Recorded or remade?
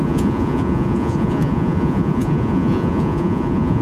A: remade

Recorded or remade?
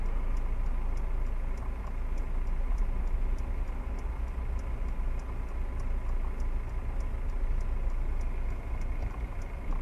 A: recorded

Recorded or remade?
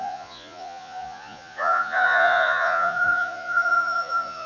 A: remade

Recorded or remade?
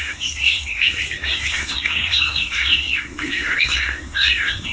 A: remade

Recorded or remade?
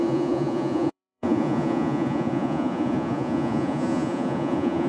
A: remade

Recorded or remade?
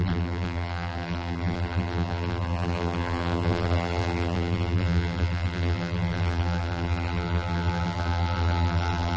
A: remade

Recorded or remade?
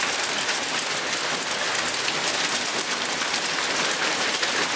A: recorded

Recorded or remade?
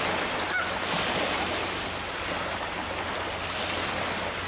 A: recorded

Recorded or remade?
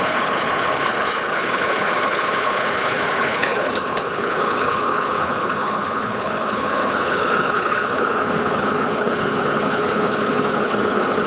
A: remade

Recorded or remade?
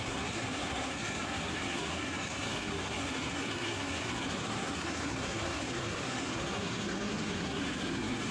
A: remade